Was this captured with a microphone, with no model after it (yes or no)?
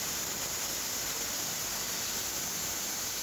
yes